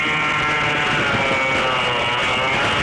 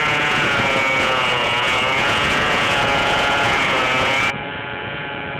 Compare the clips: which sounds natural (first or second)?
first